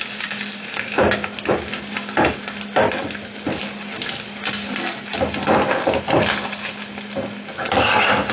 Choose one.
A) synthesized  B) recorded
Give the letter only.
B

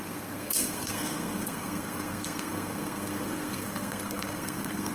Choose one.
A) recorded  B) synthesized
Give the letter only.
B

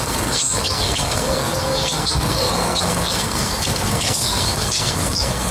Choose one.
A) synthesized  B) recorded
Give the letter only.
A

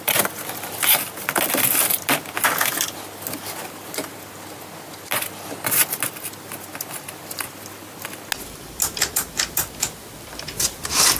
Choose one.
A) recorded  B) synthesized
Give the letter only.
A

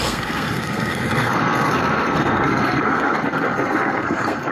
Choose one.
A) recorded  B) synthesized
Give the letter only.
B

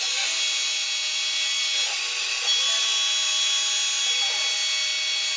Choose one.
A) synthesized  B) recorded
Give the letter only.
B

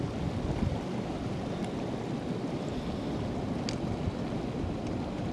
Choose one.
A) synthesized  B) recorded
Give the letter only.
B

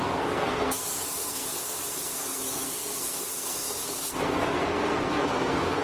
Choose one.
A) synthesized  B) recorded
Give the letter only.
A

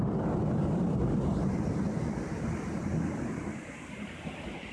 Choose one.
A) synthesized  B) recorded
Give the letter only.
B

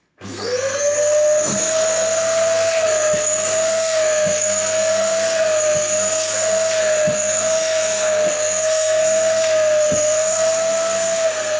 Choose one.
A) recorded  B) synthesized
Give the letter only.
B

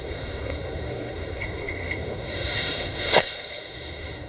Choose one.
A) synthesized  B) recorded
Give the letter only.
A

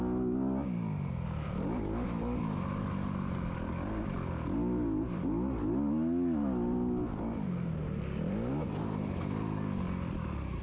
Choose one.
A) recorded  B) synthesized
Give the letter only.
A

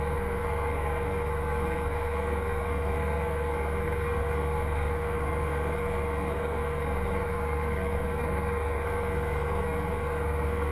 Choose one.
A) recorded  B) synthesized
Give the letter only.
B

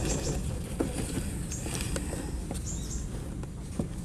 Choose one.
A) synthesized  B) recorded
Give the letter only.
B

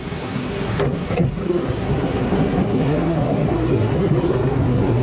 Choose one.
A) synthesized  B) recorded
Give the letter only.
A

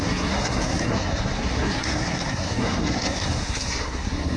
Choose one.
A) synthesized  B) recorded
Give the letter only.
A